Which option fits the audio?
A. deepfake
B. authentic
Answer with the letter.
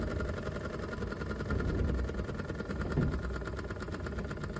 B